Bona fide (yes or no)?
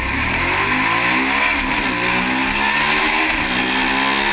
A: yes